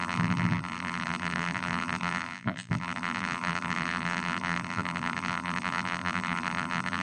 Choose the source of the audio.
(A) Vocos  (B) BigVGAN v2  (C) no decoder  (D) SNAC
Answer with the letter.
B